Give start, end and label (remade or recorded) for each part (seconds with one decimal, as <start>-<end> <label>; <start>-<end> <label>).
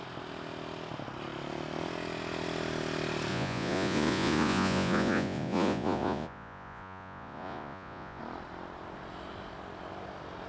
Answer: 0.0-3.3 recorded; 3.3-8.2 remade; 8.2-10.5 recorded